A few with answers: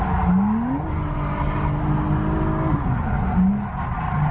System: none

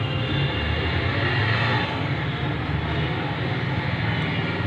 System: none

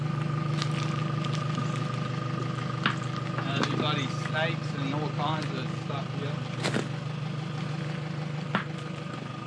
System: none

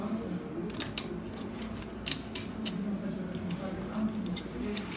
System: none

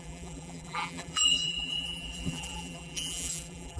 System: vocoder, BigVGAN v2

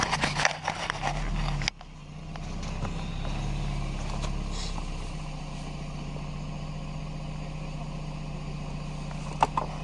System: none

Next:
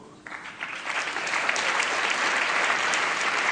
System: vocoder, BigVGAN v2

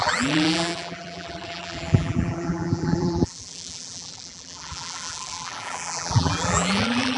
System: vocoder, BigVGAN v2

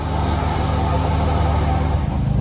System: none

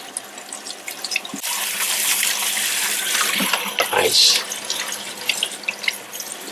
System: none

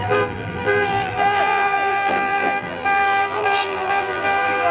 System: vocoder, BigVGAN v2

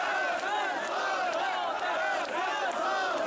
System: none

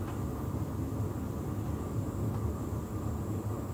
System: none